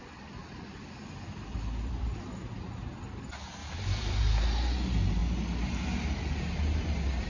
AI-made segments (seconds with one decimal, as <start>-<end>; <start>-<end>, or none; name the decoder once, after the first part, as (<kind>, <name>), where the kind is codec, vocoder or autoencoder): 0.4-2.1 (vocoder, BigVGAN v2); 3.6-4.2